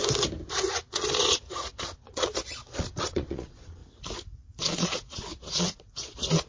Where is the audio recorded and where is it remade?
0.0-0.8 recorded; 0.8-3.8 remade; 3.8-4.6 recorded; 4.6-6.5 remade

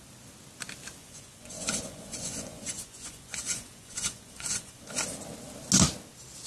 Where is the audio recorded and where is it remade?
0.0-1.0 recorded; 1.0-4.9 remade; 4.9-6.5 recorded

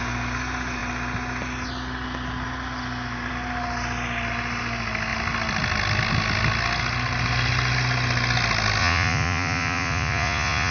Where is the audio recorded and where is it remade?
0.0-8.8 recorded; 8.8-10.7 remade

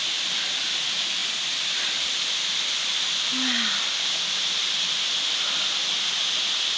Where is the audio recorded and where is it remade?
0.0-6.8 recorded